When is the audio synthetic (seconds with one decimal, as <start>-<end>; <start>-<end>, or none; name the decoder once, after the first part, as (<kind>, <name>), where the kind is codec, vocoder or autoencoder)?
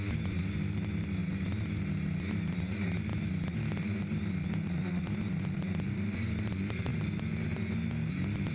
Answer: none